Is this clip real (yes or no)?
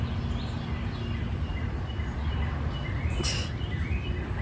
yes